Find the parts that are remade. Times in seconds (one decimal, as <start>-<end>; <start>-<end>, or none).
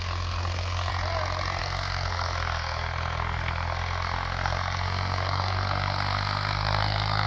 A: 0.0-0.9; 1.6-7.3